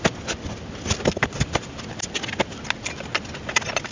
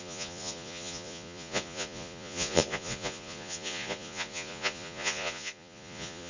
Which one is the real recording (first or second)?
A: first